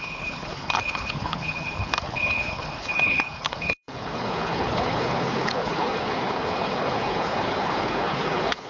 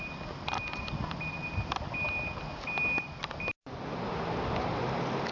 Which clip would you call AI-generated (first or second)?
first